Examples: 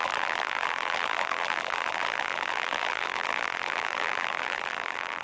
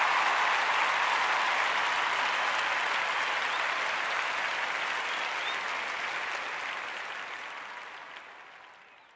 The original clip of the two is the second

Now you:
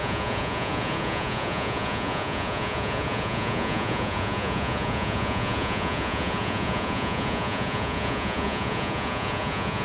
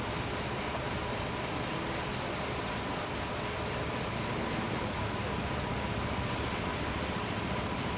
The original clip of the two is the second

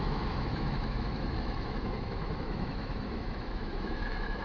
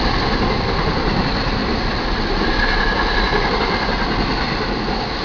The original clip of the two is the second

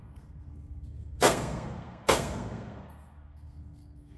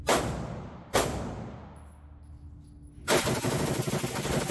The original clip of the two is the second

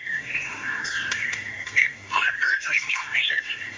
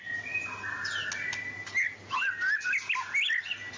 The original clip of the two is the second